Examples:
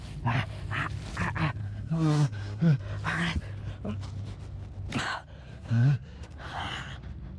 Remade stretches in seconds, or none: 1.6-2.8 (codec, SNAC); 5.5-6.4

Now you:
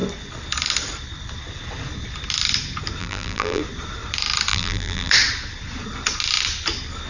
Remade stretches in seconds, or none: 3.0-3.6 (vocoder, BigVGAN v2); 4.5-5.1

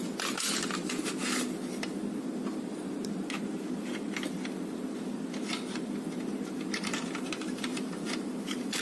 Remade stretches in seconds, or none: 7.7-8.8 (vocoder, BigVGAN v2)

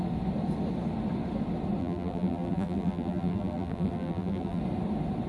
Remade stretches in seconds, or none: 1.8-4.6 (vocoder, BigVGAN v2)

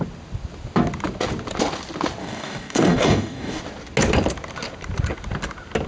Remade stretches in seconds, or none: 2.2-3.6 (codec, DAC)

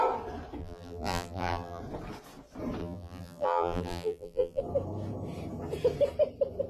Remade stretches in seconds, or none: 0.6-1.8 (vocoder, BigVGAN v2); 2.8-4.6

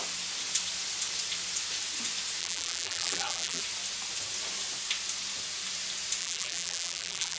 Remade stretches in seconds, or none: 2.4-3.6 (vocoder, BigVGAN v2); 6.2-7.4

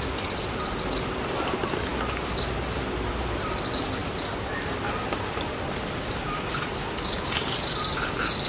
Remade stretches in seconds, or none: 0.0-1.9 (vocoder, BigVGAN v2); 3.1-4.0; 5.1-8.5